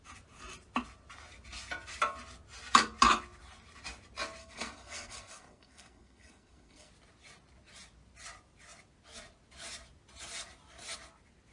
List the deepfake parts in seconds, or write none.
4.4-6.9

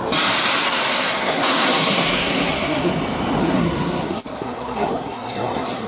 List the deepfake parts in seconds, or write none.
0.7-2.9; 3.4-5.9